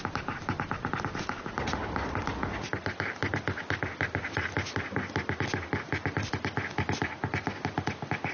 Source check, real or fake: real